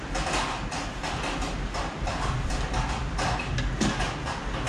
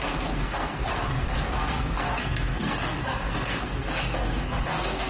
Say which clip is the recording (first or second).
first